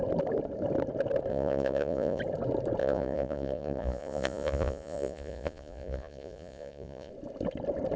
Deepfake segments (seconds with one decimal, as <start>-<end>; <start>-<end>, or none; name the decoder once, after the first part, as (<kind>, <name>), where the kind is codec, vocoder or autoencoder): 1.3-2.2 (vocoder, Vocos); 2.8-7.1